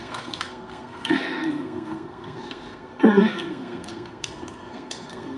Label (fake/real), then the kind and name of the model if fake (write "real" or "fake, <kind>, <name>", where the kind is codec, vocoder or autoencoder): fake, codec, SNAC